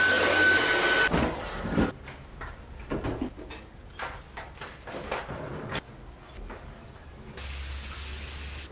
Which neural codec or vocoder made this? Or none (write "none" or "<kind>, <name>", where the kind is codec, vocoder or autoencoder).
none